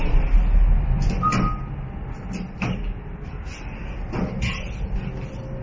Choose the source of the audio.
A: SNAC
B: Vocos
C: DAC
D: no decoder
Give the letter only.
D